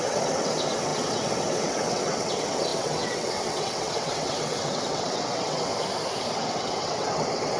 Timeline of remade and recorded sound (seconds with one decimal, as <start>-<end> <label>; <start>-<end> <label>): 0.0-5.7 remade; 5.7-6.3 recorded; 6.3-7.6 remade